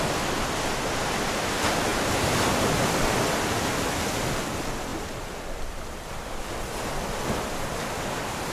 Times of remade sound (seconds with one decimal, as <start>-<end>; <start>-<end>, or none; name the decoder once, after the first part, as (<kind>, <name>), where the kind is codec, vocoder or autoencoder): none